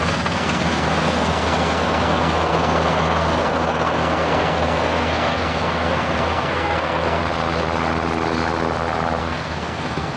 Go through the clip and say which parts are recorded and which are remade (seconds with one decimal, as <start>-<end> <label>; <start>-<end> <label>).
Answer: 0.0-7.2 remade; 7.2-9.2 recorded; 9.2-10.2 remade